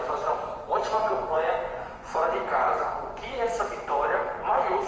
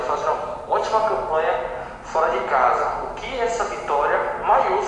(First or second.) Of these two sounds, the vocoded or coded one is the first